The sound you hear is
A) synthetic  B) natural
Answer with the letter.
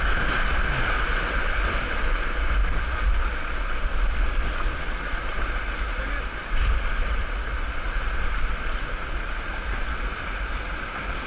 B